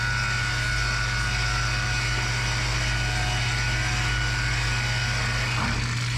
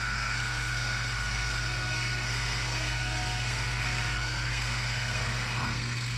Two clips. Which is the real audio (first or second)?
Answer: first